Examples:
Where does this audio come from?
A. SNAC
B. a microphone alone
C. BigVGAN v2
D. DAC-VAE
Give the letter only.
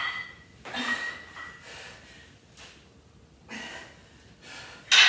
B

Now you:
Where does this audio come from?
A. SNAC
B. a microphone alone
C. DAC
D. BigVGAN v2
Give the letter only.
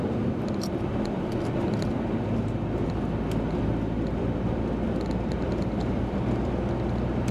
B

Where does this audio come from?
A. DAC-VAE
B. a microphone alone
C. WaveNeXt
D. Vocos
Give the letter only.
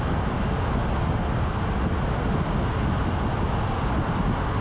B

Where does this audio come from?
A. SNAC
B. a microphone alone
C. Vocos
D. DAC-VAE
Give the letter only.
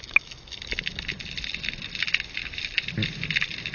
B